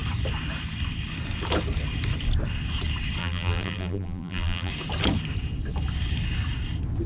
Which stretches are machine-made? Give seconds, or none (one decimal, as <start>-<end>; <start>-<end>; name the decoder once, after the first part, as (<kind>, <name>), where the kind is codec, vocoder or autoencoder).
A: 3.2-4.7 (vocoder, BigVGAN v2)